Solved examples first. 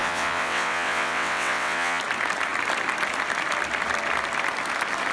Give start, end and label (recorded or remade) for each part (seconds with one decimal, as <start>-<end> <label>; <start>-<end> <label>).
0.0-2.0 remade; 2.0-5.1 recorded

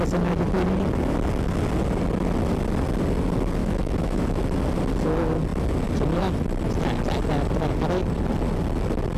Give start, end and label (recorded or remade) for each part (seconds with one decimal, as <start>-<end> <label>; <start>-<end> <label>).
0.0-3.6 recorded; 3.6-4.4 remade; 4.4-9.2 recorded

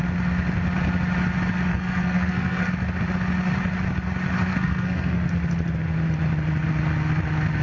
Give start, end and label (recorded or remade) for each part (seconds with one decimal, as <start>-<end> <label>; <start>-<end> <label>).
0.0-1.7 recorded; 1.7-2.7 remade; 2.7-4.5 recorded; 4.5-5.3 remade; 5.3-7.6 recorded

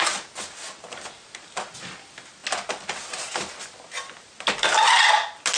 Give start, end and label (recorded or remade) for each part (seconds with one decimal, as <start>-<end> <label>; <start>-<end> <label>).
0.0-5.6 recorded

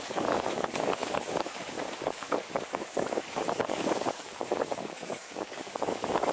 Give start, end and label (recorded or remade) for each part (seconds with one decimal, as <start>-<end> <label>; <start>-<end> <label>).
0.0-6.3 remade

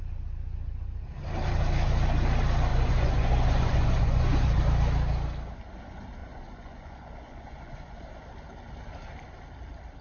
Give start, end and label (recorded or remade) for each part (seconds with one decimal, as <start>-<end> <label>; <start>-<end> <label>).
0.0-2.7 recorded; 2.7-4.6 remade; 4.6-6.2 recorded; 6.2-8.0 remade; 8.0-10.0 recorded